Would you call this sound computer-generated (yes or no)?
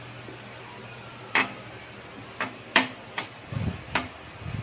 yes